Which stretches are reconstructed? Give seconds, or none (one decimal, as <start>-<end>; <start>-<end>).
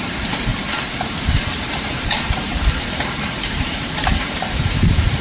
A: 0.0-0.5; 1.0-5.2